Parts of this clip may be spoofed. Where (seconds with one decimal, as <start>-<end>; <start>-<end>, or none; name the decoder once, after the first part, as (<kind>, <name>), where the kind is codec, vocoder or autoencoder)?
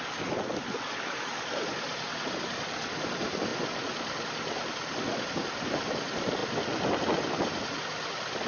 none